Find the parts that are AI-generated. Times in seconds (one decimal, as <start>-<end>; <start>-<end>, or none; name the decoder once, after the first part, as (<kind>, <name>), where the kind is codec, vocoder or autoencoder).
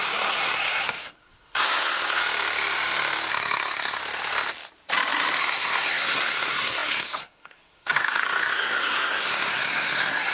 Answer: 0.0-2.2 (codec, SNAC); 3.3-4.0; 5.4-10.3